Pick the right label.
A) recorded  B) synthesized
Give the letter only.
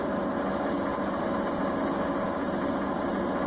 A